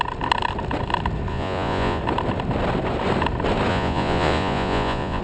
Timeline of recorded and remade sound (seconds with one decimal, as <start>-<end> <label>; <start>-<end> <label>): 0.0-1.3 recorded; 1.3-2.0 remade; 2.0-3.7 recorded; 3.7-5.2 remade